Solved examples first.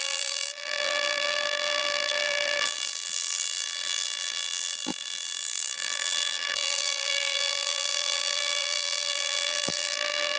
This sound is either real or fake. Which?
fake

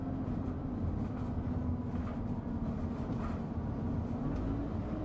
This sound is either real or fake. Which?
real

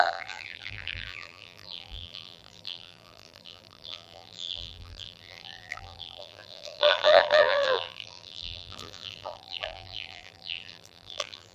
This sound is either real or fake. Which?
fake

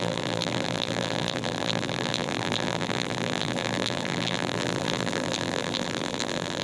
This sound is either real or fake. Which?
fake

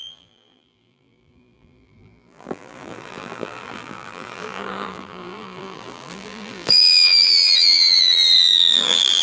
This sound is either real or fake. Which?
fake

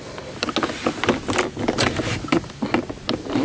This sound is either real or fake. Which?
real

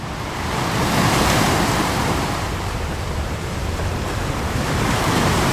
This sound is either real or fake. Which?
fake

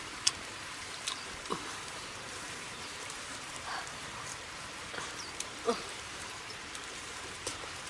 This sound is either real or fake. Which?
fake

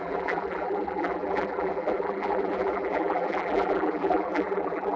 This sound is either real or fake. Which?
fake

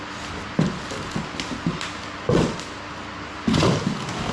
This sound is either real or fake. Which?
real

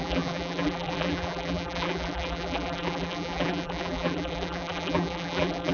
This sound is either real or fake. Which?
fake